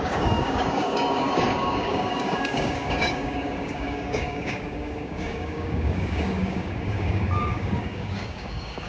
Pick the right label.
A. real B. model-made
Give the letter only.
B